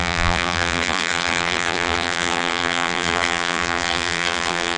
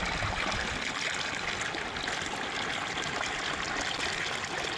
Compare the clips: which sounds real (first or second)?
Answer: second